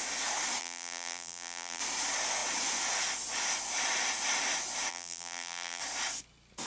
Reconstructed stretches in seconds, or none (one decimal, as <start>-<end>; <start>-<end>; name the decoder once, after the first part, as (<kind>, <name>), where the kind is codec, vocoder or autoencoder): 0.6-1.8 (vocoder, BigVGAN v2); 4.9-5.8